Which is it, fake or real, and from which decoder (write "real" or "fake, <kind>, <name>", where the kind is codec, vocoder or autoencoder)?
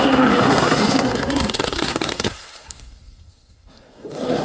fake, codec, SNAC